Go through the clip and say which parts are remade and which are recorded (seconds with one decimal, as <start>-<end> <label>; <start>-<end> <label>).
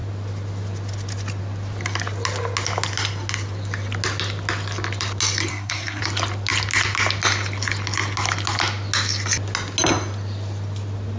0.0-5.5 recorded; 5.5-6.0 remade; 6.0-11.2 recorded